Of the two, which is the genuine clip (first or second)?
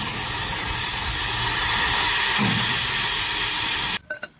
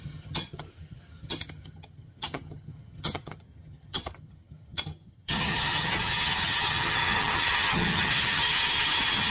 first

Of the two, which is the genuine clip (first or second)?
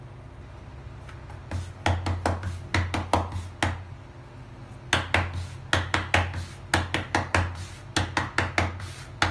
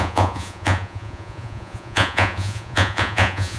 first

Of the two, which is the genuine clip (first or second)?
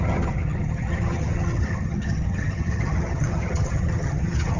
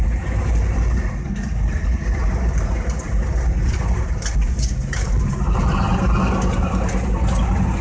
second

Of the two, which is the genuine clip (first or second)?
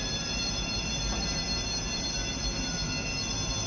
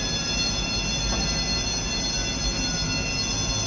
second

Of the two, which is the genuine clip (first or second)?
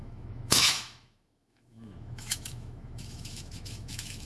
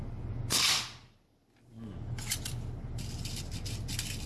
second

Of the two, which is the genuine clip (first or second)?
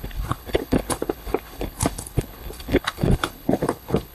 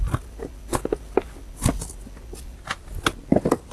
second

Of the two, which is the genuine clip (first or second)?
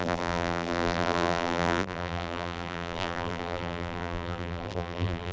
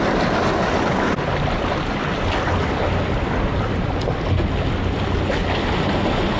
second